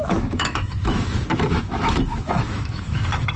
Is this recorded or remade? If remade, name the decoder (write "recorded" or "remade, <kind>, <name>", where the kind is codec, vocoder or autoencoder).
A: remade, autoencoder, DAC-VAE